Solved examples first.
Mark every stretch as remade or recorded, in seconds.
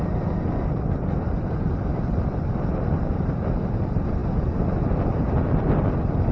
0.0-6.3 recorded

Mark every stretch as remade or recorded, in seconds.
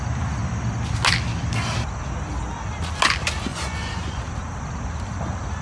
0.0-3.5 recorded; 3.5-4.2 remade; 4.2-5.6 recorded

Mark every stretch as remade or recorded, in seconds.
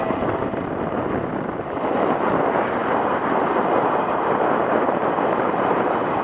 0.0-2.3 recorded; 2.3-6.2 remade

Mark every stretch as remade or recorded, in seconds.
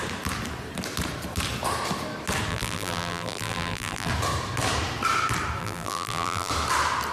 0.0-2.5 recorded; 2.5-4.1 remade; 4.1-5.6 recorded; 5.6-6.5 remade; 6.5-7.1 recorded